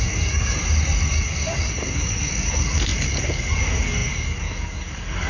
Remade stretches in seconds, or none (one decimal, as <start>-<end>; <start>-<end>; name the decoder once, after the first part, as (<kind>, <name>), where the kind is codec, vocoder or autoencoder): 0.0-0.6 (codec, DAC); 1.1-5.3